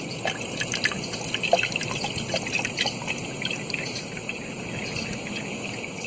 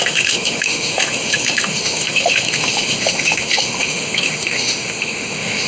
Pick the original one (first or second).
first